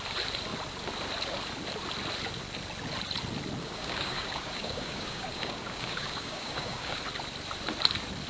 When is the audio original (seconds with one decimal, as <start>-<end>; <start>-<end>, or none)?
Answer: 0.0-3.6; 7.0-8.3